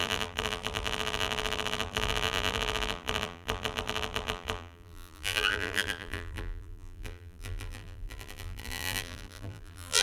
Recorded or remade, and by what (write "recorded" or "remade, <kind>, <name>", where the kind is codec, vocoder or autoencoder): remade, vocoder, BigVGAN v2